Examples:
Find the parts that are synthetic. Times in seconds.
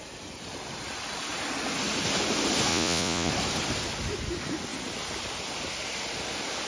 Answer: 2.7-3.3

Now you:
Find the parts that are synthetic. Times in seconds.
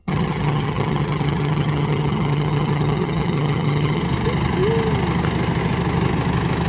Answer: 0.0-4.0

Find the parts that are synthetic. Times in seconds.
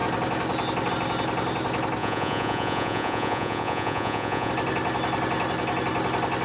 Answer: 2.0-4.5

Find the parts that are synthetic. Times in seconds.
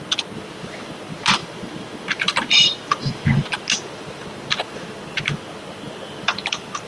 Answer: 1.4-3.1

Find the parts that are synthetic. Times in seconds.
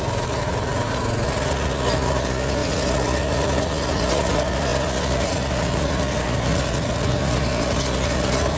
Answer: 0.0-8.6